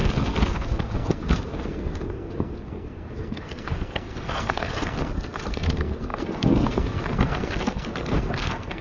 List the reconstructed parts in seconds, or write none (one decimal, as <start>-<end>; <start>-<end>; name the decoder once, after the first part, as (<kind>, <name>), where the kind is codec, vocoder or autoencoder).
0.0-8.8 (codec, SNAC)